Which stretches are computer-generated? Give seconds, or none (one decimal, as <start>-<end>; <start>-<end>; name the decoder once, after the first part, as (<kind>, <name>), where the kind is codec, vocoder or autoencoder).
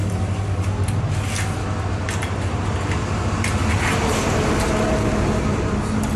none